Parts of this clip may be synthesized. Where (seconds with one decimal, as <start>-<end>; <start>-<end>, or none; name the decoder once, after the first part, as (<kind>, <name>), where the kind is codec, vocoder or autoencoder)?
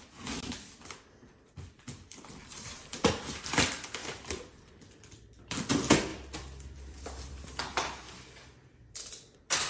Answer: 4.0-4.7 (vocoder, BigVGAN v2); 6.1-7.3